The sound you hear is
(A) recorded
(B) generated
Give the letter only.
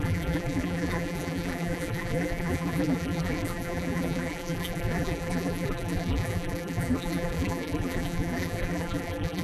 B